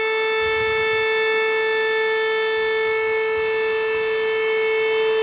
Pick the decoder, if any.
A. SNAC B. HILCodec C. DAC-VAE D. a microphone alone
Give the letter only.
D